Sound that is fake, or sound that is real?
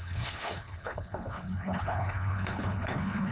fake